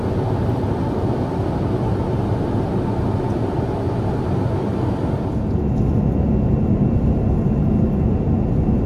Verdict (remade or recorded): recorded